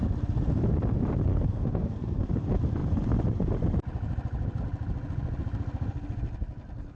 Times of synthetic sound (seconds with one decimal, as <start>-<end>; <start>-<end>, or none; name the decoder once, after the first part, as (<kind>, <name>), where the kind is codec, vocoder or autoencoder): 1.3-2.3 (codec, SNAC)